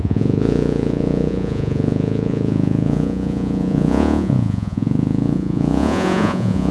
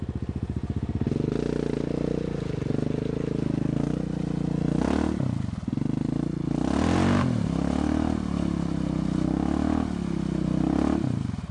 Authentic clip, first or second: second